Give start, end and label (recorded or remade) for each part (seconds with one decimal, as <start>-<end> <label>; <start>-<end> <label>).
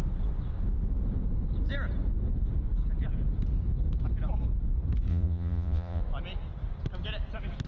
0.0-5.1 recorded; 5.1-6.0 remade; 6.0-7.7 recorded